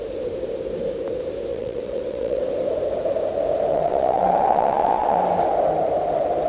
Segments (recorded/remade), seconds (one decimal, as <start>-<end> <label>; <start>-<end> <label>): 0.0-1.5 recorded; 1.5-2.4 remade; 2.4-3.7 recorded; 3.7-5.2 remade; 5.2-6.5 recorded